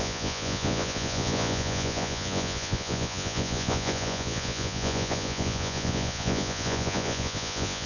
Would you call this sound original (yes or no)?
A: no